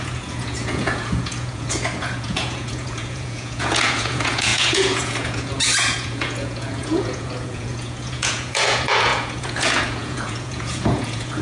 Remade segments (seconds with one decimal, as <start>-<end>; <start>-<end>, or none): 0.0-11.4